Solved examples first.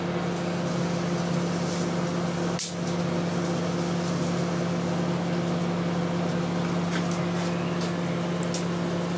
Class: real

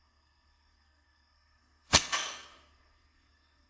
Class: fake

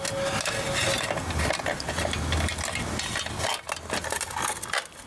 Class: real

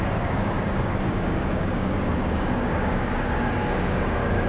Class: fake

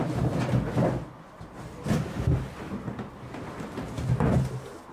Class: real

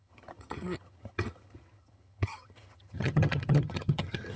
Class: fake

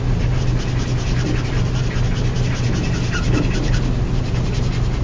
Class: real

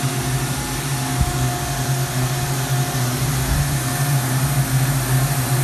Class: real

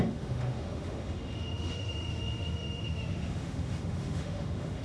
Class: fake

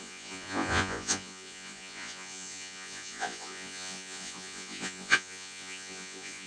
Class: fake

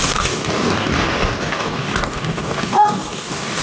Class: fake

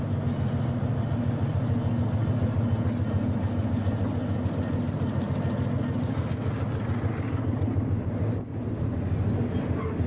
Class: real